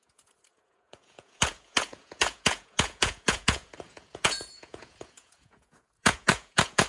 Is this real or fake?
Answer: fake